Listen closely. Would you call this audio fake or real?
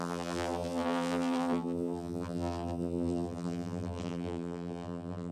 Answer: fake